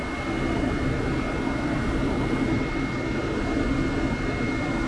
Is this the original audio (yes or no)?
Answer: yes